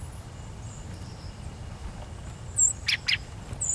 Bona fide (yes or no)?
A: yes